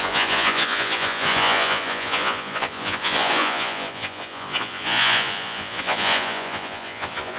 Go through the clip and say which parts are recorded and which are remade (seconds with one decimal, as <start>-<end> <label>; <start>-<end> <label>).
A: 0.0-7.4 remade

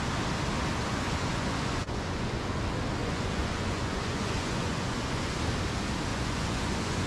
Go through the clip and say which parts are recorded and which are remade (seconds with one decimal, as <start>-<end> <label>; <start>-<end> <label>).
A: 0.0-0.9 recorded; 0.9-2.6 remade; 2.6-3.0 recorded; 3.0-5.3 remade; 5.3-6.1 recorded; 6.1-7.1 remade

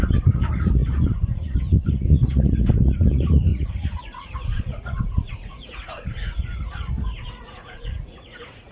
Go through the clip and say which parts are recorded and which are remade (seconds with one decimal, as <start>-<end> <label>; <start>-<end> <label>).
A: 0.0-8.7 remade

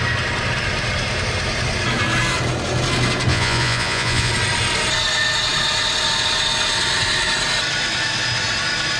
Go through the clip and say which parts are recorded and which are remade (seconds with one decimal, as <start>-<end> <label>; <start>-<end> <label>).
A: 0.0-3.3 recorded; 3.3-4.3 remade; 4.3-9.0 recorded

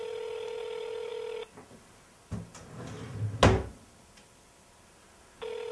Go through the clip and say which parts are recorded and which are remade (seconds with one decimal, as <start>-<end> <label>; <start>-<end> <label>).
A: 0.0-5.7 recorded

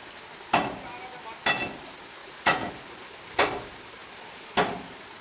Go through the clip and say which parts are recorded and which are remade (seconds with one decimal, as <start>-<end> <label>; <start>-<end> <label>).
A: 0.0-2.2 recorded; 2.2-2.7 remade; 2.7-5.2 recorded